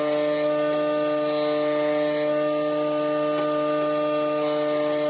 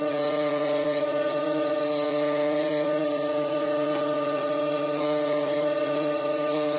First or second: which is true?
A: first